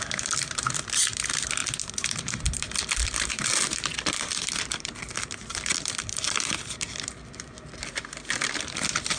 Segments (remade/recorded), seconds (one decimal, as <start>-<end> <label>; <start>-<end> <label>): 0.0-9.2 remade